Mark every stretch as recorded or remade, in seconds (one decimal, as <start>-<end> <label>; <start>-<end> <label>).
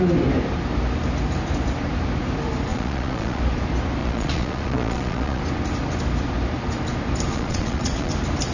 0.0-2.7 recorded; 2.7-3.4 remade; 3.4-4.0 recorded; 4.0-5.4 remade; 5.4-7.3 recorded; 7.3-8.1 remade; 8.1-8.5 recorded